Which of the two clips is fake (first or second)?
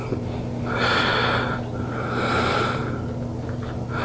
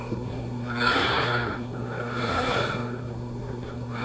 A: second